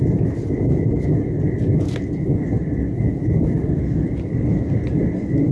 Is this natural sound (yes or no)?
yes